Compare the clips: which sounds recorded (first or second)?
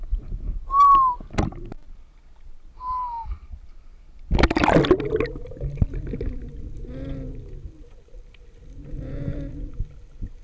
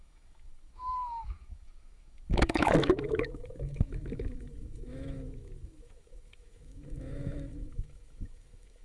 first